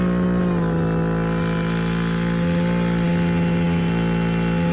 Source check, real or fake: real